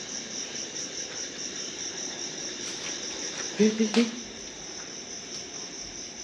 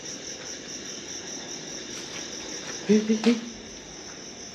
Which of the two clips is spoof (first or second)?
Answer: first